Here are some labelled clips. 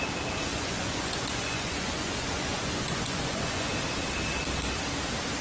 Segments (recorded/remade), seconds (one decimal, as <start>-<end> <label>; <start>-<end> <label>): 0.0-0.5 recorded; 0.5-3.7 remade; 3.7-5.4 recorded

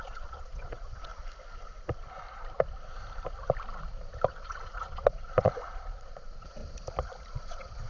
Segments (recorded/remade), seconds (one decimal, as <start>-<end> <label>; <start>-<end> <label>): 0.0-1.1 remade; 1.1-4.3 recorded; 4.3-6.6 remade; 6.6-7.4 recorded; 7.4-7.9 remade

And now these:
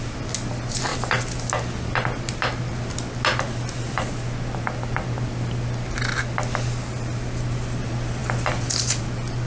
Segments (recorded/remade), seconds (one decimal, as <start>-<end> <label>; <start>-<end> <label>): 0.0-9.5 recorded

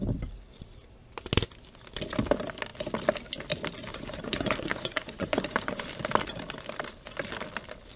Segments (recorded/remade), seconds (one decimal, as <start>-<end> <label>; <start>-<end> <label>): 0.0-3.9 recorded; 3.9-5.9 remade; 5.9-8.0 recorded

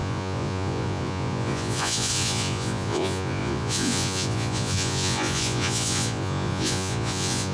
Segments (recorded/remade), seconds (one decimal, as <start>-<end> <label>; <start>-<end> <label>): 0.0-7.5 remade